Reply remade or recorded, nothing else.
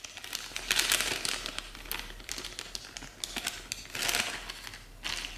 recorded